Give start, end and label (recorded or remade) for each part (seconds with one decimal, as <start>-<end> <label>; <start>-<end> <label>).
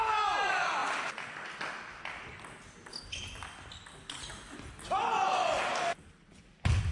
0.0-6.9 recorded